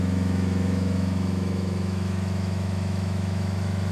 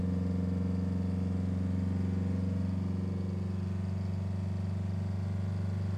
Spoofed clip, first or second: first